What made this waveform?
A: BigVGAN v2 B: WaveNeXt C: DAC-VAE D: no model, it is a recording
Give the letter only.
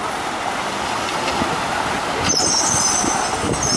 D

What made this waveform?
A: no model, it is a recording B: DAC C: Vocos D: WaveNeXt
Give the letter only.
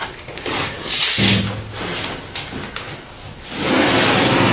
A